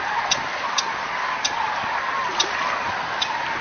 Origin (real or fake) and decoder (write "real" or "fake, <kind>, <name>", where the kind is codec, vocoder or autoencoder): real